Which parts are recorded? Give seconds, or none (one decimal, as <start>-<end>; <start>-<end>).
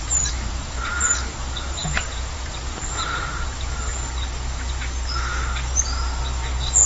3.9-6.9